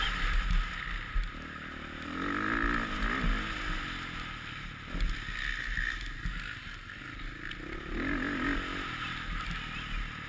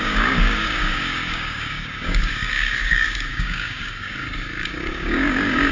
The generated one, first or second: second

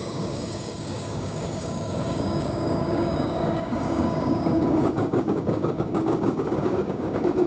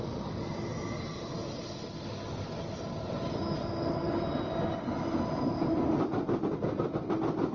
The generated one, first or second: first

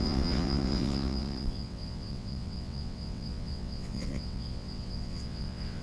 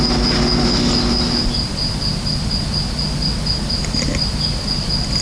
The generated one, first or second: first